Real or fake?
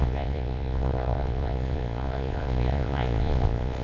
fake